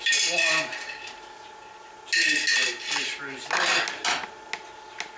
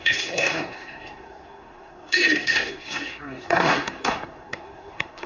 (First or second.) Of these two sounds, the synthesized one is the second